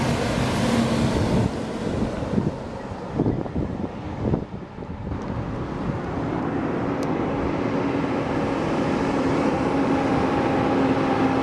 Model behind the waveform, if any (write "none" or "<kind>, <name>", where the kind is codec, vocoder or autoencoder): none